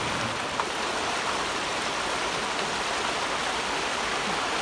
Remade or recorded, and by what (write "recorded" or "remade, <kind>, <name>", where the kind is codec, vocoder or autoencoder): recorded